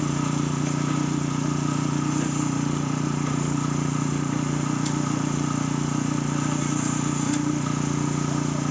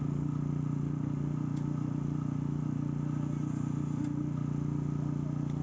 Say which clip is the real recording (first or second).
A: second